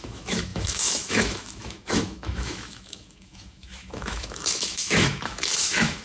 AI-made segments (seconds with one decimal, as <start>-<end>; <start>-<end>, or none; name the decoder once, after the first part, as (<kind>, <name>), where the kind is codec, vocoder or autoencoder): 0.0-6.0 (autoencoder, DAC-VAE)